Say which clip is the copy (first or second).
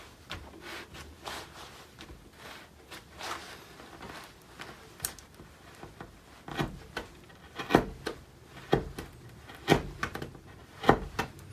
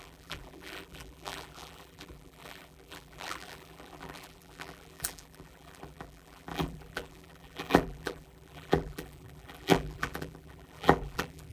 second